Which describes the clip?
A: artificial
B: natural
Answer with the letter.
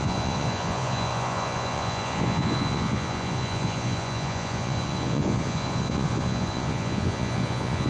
A